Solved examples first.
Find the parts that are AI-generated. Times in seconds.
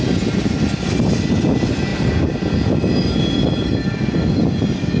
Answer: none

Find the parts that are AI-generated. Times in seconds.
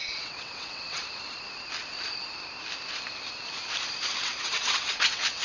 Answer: 0.0-1.0 (vocoder, WaveNeXt); 4.2-5.4